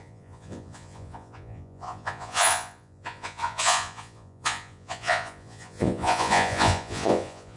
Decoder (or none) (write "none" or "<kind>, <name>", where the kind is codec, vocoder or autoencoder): vocoder, Vocos